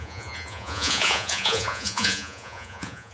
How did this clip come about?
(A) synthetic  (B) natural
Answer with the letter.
A